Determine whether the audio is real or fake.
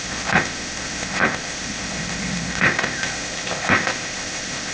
fake